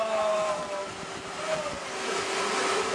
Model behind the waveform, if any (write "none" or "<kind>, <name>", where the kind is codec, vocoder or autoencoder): none